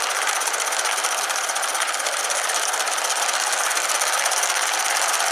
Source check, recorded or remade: recorded